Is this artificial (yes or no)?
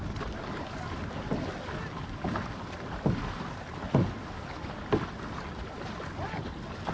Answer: no